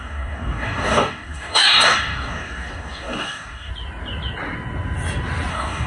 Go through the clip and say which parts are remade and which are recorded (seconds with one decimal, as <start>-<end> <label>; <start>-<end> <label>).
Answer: 0.0-3.7 remade; 3.7-5.5 recorded; 5.5-5.9 remade